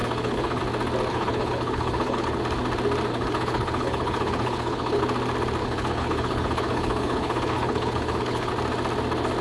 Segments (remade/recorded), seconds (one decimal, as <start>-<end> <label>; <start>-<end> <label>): 0.0-0.6 remade; 0.6-1.1 recorded; 1.1-2.4 remade; 2.4-3.1 recorded; 3.1-5.0 remade; 5.0-5.6 recorded; 5.6-8.5 remade; 8.5-9.4 recorded